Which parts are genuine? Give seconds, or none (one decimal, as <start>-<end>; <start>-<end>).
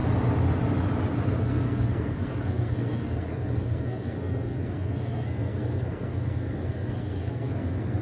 0.0-1.4